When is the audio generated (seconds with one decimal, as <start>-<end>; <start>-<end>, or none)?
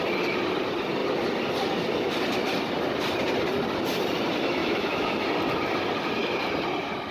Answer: 4.6-5.2